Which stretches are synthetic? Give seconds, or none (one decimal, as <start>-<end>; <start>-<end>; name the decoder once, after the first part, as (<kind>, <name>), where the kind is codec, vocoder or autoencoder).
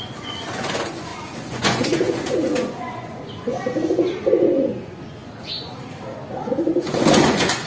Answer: 0.0-5.7 (vocoder, Vocos); 6.3-7.7